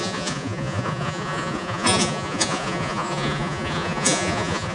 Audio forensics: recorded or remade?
remade